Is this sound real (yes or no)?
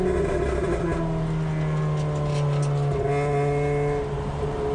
yes